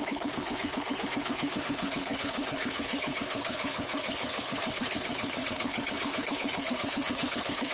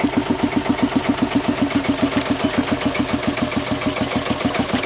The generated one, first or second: first